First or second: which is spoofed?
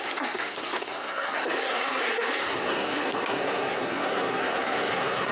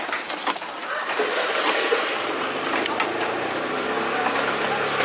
first